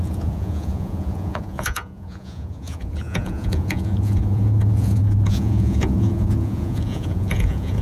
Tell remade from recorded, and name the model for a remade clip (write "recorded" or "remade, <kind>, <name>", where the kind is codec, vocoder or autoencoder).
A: remade, vocoder, Vocos